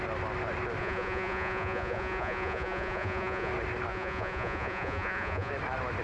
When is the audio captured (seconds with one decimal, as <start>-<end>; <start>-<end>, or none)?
0.0-0.8; 3.5-3.9; 5.5-6.0